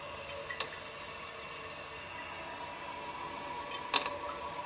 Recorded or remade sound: recorded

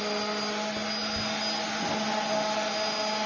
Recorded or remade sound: recorded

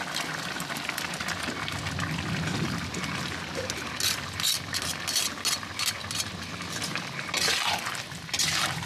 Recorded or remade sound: recorded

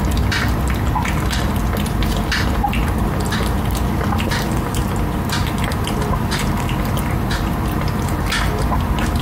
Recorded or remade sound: recorded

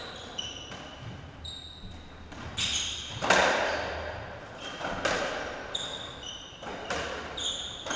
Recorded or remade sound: recorded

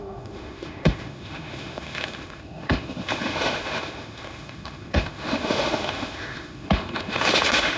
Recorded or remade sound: remade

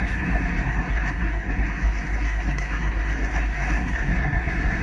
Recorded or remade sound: remade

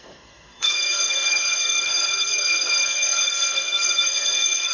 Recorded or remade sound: remade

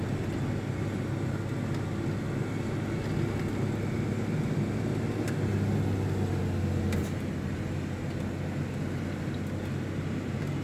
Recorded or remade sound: recorded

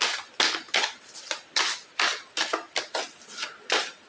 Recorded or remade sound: recorded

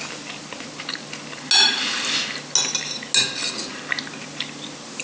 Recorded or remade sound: recorded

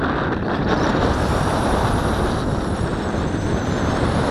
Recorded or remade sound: recorded